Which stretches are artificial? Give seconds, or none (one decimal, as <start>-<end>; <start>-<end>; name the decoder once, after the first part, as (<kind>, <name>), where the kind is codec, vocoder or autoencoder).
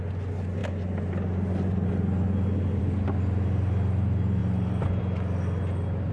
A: none